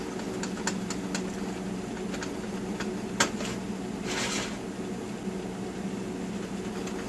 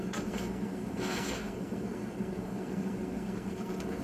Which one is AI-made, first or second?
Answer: second